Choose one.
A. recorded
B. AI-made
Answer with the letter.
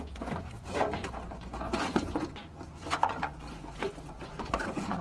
B